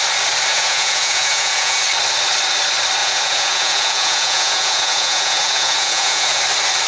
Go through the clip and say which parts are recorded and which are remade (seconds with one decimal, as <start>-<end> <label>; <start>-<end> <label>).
0.0-0.5 recorded; 0.5-1.8 remade; 1.8-3.0 recorded; 3.0-6.4 remade; 6.4-6.9 recorded